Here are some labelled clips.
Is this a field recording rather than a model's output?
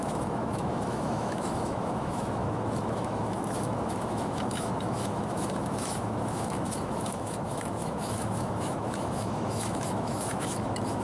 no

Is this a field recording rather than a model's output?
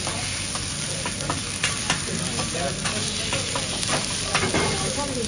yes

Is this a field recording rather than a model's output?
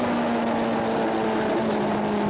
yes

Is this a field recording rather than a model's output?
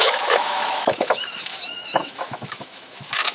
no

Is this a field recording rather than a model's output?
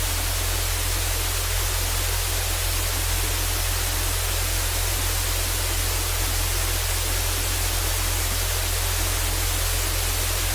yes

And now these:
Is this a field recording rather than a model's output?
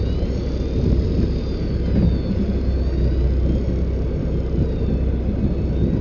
yes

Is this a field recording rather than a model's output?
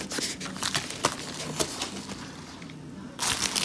yes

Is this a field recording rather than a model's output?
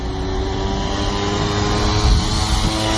yes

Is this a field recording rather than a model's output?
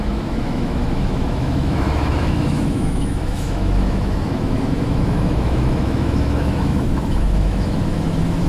no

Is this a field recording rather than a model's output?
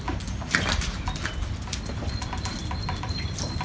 yes